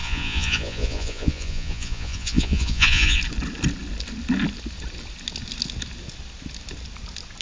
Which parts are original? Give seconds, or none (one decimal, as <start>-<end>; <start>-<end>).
3.2-7.4